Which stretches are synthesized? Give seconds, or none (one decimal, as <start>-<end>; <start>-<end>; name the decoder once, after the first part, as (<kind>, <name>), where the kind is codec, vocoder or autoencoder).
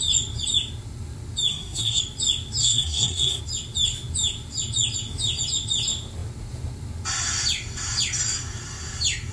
1.5-2.0 (codec, SNAC); 2.6-3.4